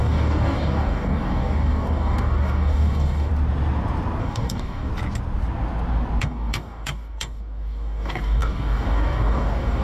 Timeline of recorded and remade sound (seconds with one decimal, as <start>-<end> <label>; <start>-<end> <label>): 0.0-3.3 remade; 3.3-4.2 recorded; 4.2-4.9 remade; 4.9-6.2 recorded; 6.2-9.8 remade